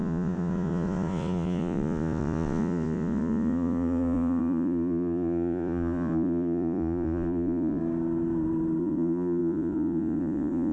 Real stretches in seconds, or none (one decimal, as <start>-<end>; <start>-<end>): 7.8-8.8